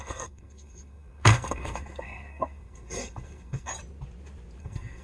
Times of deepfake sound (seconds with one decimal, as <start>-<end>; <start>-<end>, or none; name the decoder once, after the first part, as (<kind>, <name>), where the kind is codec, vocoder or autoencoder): 0.0-3.7 (codec, SNAC); 4.6-5.0